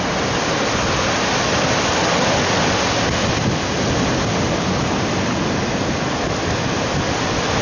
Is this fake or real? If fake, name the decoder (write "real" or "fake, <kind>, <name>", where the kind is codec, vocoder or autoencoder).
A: real